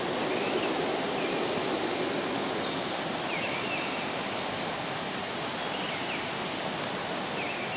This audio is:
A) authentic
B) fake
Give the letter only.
A